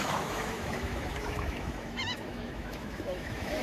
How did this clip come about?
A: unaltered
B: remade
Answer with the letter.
B